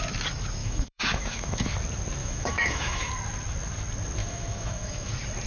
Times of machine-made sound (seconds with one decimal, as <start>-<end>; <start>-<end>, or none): 0.6-1.7; 2.2-3.1; 4.2-5.1